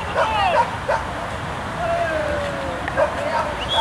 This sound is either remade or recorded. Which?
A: recorded